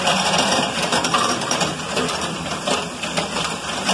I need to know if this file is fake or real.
fake